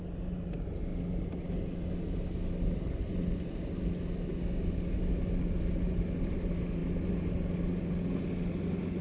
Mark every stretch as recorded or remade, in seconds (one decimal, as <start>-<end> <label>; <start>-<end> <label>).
0.0-9.0 recorded

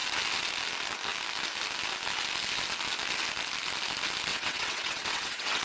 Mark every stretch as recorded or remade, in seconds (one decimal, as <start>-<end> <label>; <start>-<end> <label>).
0.0-4.3 recorded; 4.3-5.6 remade

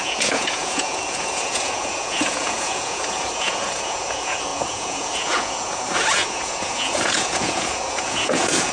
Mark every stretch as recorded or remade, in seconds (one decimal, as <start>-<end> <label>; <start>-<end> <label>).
0.0-8.7 remade

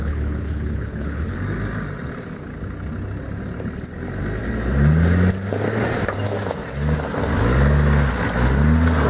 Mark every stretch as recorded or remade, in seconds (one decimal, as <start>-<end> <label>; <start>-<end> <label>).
0.0-1.4 remade; 1.4-9.1 recorded

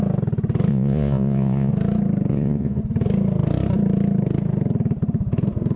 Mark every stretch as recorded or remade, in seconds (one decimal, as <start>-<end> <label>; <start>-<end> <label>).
0.0-0.7 recorded; 0.7-1.7 remade; 1.7-2.3 recorded; 2.3-2.8 remade; 2.8-5.8 recorded

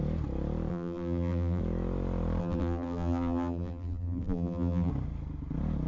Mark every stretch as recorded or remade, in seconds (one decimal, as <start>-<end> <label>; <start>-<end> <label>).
0.0-0.7 recorded; 0.7-1.6 remade; 1.6-2.4 recorded; 2.4-4.9 remade; 4.9-5.9 recorded

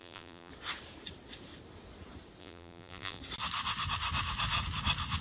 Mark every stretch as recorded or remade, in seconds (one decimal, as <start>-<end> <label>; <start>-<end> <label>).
0.0-0.5 remade; 0.5-2.4 recorded; 2.4-3.2 remade; 3.2-5.2 recorded